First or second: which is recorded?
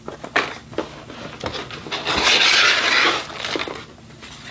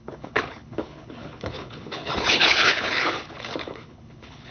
first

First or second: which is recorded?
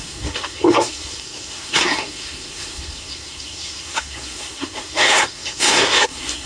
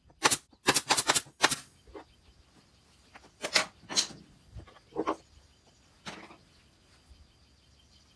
second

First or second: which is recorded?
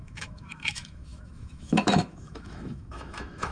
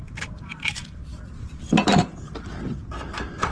second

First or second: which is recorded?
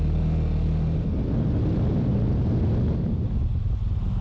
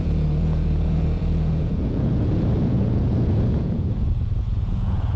first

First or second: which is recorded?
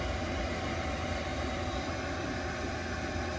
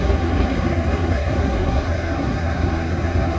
first